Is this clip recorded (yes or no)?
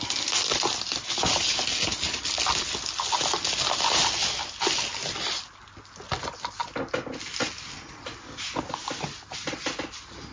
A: yes